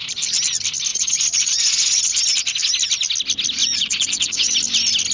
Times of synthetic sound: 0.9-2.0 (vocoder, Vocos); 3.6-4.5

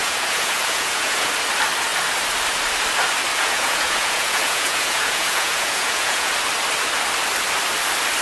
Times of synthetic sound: 0.0-1.3 (vocoder, Vocos); 3.3-6.3

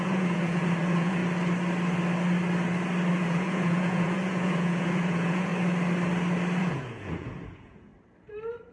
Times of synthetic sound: 0.0-1.2 (vocoder, Vocos); 3.2-5.5; 6.6-7.9

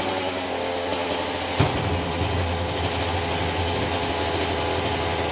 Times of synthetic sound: none

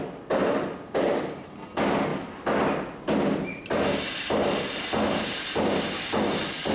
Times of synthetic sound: none